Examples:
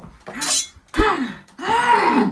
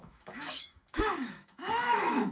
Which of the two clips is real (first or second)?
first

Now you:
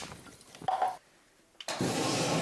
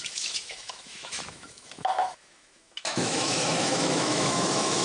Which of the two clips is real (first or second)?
first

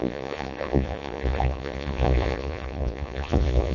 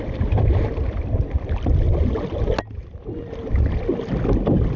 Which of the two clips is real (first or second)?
second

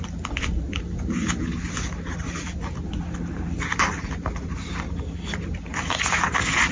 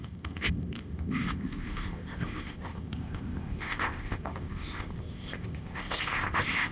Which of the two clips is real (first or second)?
first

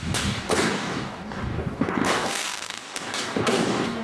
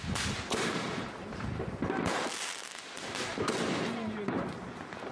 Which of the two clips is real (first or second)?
second